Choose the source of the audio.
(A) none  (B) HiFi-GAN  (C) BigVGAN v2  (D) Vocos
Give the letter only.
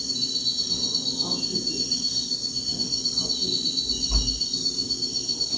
A